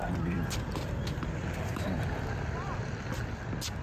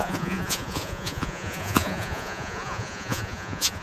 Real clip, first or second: first